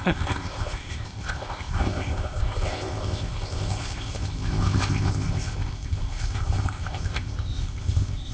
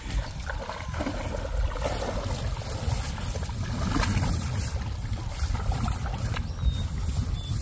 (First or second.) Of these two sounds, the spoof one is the first